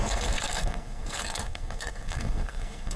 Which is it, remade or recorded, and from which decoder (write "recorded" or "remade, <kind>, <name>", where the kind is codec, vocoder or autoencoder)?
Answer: remade, codec, SNAC